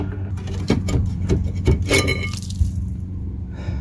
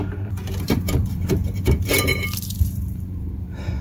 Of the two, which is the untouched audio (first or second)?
first